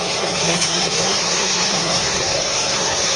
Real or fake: fake